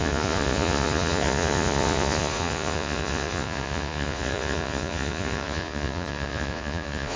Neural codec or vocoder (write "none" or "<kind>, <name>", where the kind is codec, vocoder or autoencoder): vocoder, Vocos